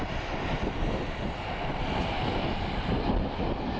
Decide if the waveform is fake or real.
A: real